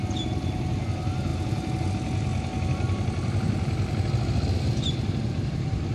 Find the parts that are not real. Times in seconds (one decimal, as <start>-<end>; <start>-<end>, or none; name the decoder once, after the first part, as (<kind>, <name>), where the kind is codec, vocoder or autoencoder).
none